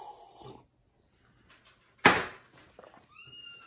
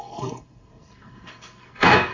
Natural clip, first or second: first